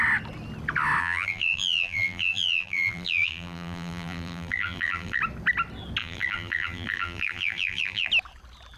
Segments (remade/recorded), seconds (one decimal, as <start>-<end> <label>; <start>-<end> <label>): 0.0-1.0 recorded; 1.0-5.2 remade; 5.2-6.0 recorded; 6.0-8.1 remade; 8.1-8.8 recorded